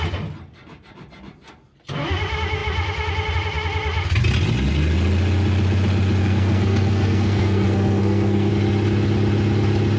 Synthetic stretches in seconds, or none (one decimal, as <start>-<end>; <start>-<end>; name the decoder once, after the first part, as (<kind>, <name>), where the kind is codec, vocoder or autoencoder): 6.2-8.5 (codec, SNAC)